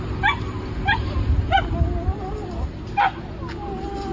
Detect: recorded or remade recorded